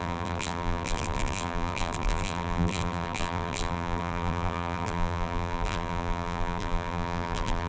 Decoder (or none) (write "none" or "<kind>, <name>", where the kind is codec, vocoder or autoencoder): vocoder, BigVGAN v2